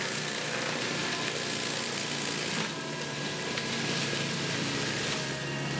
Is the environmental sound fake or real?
real